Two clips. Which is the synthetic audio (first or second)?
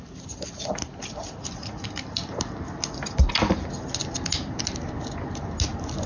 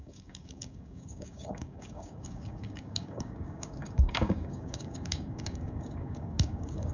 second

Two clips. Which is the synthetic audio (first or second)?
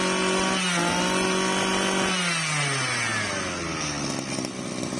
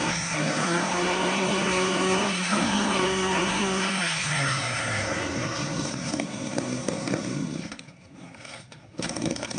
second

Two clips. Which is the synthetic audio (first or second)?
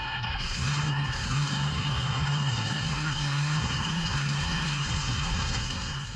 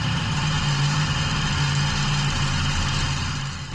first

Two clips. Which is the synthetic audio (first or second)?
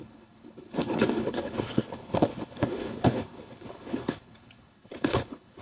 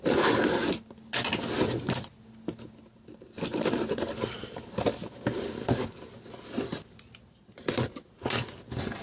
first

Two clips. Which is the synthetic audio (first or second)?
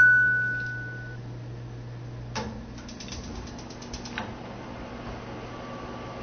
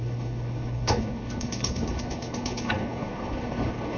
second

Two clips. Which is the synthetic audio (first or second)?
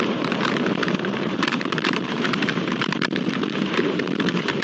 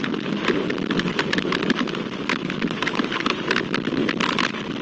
first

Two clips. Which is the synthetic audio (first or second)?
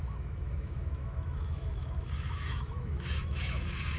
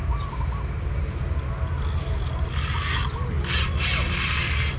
first